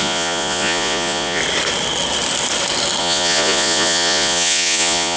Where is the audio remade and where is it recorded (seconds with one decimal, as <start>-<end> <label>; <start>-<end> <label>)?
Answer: 0.0-1.4 remade; 1.4-3.0 recorded; 3.0-5.2 remade